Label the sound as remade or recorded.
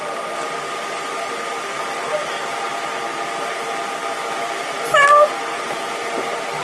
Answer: recorded